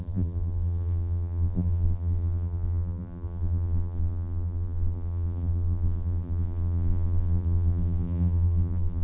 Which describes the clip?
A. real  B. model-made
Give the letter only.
B